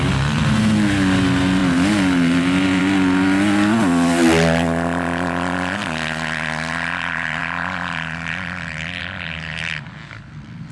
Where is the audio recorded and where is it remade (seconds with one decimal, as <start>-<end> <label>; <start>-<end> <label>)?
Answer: 0.0-10.7 recorded